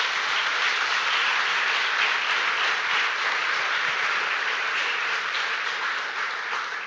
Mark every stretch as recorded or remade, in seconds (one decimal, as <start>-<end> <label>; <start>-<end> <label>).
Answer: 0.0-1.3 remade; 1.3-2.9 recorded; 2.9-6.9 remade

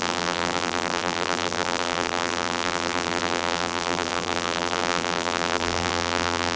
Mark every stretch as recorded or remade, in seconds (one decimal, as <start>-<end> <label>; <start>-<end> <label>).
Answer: 0.0-6.5 remade

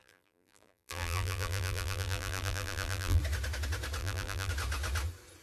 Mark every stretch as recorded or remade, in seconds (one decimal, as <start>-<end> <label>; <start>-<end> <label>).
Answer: 0.0-3.2 remade; 3.2-4.0 recorded; 4.0-4.5 remade; 4.5-5.4 recorded